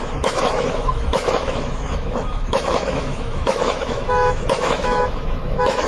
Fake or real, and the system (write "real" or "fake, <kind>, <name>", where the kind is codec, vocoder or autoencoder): fake, autoencoder, DAC-VAE